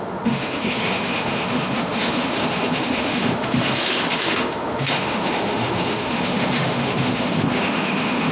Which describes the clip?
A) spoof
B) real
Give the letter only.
A